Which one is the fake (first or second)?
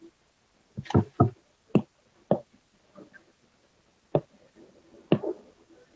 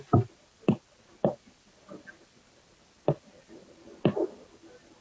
second